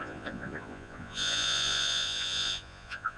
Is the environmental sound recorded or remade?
remade